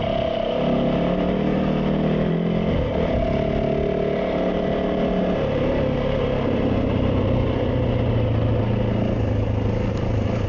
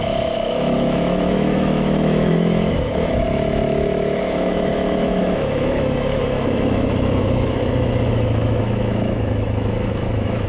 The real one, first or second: first